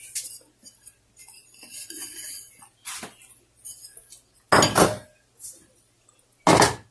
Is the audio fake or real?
real